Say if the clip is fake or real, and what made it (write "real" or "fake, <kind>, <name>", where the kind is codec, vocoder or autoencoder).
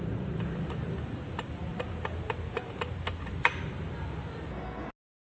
real